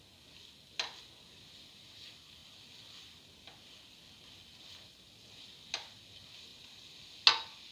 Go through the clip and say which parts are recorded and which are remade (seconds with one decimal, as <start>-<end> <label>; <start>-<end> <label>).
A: 0.0-7.7 recorded